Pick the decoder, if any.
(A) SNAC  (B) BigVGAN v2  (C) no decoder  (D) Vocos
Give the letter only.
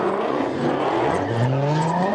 D